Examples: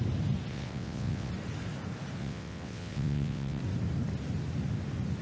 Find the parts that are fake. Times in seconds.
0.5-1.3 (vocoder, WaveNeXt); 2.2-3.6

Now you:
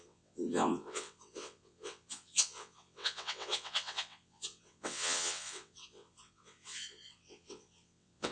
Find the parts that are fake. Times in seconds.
0.0-8.3 (vocoder, WaveNeXt)

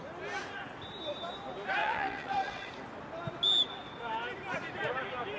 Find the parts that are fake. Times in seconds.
1.8-2.7 (vocoder, WaveNeXt)

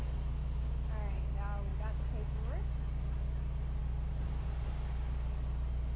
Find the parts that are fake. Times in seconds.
none

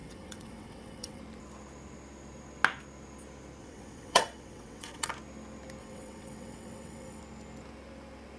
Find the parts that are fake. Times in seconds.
0.0-1.2 (vocoder, WaveNeXt); 3.6-5.1; 5.8-7.2

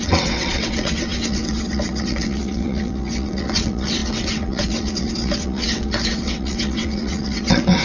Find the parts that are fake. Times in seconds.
0.0-7.8 (vocoder, WaveNeXt)

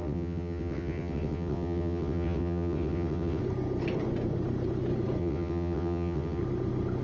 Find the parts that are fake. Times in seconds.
0.0-3.4 (vocoder, WaveNeXt); 5.2-6.4

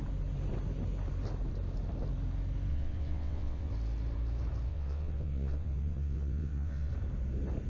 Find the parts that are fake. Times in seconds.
2.7-3.7 (vocoder, WaveNeXt); 4.7-6.9